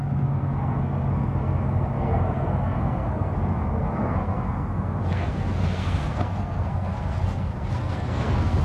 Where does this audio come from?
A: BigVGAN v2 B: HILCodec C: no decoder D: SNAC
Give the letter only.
D